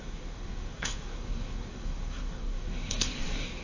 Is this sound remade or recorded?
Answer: remade